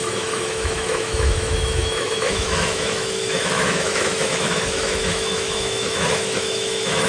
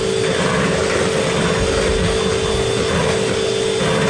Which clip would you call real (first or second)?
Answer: second